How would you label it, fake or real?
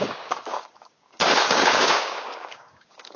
fake